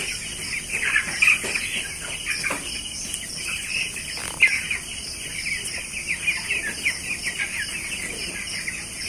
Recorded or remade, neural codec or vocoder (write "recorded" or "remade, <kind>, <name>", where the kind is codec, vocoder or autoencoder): recorded